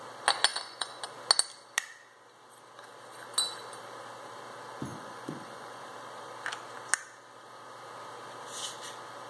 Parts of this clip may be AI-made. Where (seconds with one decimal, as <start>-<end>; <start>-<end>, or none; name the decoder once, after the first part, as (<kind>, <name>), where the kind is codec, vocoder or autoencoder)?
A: 0.5-1.0 (vocoder, Vocos); 4.9-5.8